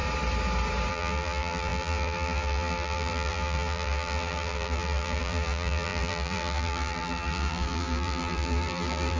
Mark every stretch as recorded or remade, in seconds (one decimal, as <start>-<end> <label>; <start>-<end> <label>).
0.0-0.9 recorded; 0.9-9.2 remade